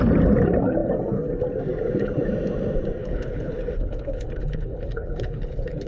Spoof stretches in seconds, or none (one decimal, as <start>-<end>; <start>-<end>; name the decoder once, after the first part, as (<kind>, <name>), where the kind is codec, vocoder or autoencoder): 3.0-5.9 (codec, HILCodec)